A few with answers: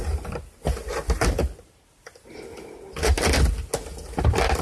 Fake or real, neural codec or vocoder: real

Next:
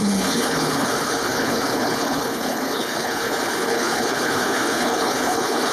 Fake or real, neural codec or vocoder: fake, codec, HILCodec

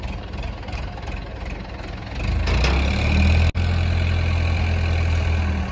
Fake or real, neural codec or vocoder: real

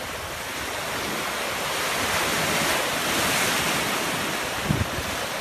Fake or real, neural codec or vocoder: real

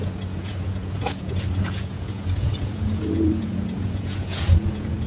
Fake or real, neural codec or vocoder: fake, vocoder, Vocos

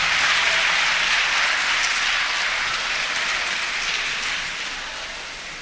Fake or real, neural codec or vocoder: real